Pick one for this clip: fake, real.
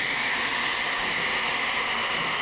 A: real